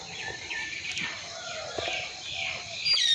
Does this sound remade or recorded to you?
recorded